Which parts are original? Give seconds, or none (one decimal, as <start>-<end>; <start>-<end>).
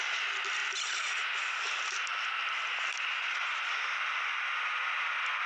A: 0.0-5.5